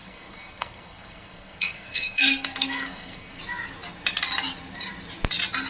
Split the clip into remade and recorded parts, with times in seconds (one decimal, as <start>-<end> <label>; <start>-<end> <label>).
0.0-3.4 remade; 3.4-5.7 recorded

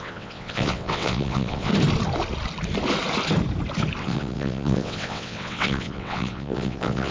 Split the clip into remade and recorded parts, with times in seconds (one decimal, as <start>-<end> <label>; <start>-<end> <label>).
0.0-1.7 remade; 1.7-4.0 recorded; 4.0-7.1 remade

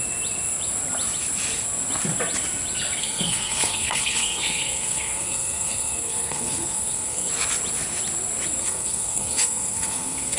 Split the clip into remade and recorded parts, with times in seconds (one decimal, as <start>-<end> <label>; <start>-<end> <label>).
0.0-3.0 recorded; 3.0-7.3 remade; 7.3-8.6 recorded; 8.6-10.4 remade

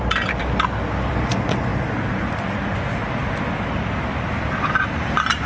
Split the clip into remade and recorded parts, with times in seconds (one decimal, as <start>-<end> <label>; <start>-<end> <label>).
0.0-5.5 recorded

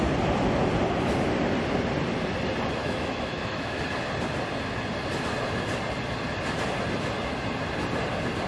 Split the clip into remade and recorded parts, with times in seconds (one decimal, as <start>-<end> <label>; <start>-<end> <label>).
0.0-2.8 recorded; 2.8-3.8 remade; 3.8-8.5 recorded